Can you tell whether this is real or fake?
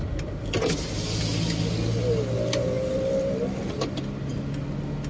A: real